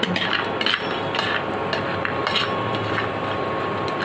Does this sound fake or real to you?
real